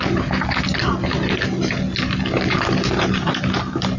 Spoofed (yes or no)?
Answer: no